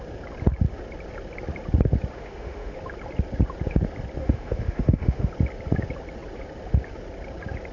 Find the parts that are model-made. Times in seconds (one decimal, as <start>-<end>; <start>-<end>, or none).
2.1-2.8; 4.2-5.3